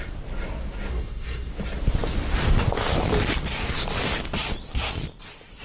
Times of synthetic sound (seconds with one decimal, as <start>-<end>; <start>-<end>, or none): 0.9-1.5